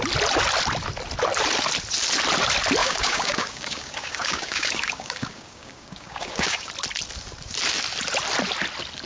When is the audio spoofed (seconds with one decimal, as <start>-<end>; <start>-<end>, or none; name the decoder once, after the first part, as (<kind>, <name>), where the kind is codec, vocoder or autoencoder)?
2.8-6.7 (codec, DAC)